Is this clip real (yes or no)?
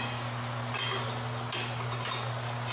yes